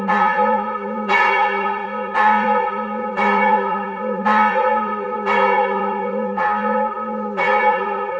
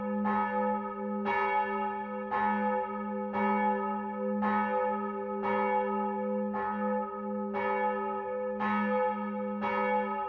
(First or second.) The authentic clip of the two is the second